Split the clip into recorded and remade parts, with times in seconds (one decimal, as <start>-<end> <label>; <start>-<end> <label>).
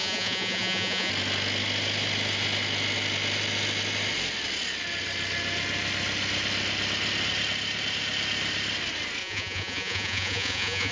0.0-1.1 remade; 1.1-9.2 recorded; 9.2-10.9 remade